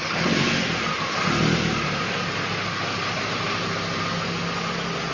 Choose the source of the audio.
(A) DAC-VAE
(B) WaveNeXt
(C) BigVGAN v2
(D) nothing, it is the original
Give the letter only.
D